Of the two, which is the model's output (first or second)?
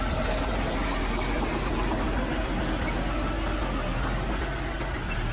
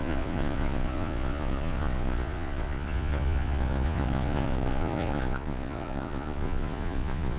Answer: second